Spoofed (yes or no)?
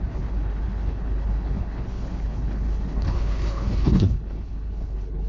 yes